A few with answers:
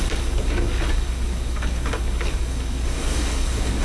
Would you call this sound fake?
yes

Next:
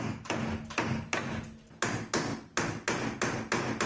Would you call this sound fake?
no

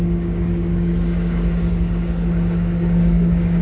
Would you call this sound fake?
yes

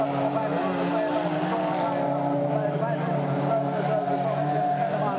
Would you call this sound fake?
no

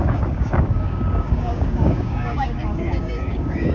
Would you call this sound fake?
yes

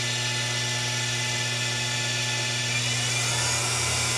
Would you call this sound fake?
no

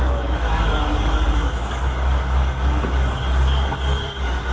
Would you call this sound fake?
yes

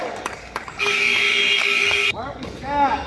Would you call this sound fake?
yes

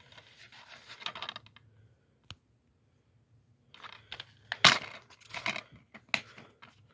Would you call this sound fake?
no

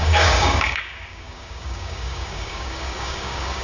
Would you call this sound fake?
yes